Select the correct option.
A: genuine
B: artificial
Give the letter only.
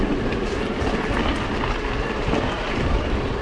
A